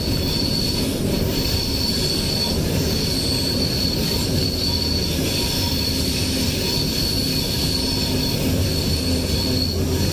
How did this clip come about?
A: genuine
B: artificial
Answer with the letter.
A